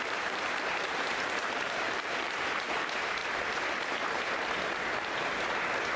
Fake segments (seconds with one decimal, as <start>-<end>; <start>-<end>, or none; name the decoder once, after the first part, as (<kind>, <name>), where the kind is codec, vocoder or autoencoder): 0.0-3.2 (vocoder, BigVGAN v2)